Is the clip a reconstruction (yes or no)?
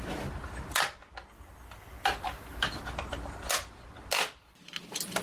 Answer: no